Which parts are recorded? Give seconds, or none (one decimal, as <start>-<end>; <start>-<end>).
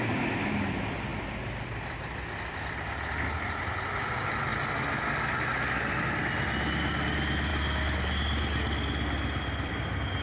0.0-10.2